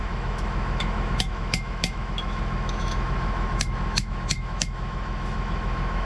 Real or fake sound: fake